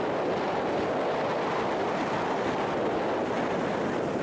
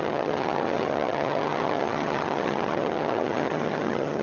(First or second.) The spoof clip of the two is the second